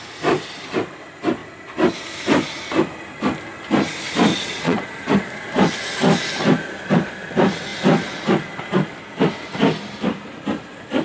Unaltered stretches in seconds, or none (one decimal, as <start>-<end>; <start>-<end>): 0.0-4.3; 4.9-11.0